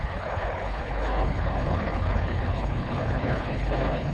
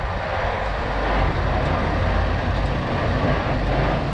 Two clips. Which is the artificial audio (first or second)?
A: first